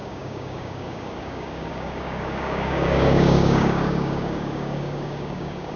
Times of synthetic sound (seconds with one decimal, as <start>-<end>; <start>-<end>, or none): 0.0-5.8